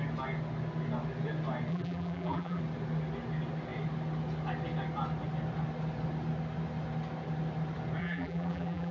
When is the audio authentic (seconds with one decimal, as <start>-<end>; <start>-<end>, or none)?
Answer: 0.0-1.7; 2.6-8.0